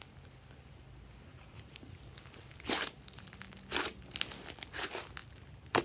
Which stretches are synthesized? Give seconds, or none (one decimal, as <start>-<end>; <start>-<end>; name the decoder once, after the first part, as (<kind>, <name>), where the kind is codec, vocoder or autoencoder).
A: 1.3-3.4 (vocoder, BigVGAN v2); 5.2-5.8